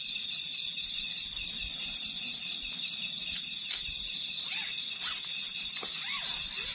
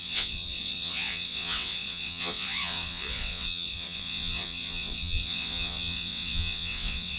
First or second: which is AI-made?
second